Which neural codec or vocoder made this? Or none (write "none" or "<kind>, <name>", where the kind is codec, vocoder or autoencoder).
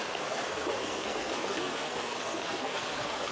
codec, SNAC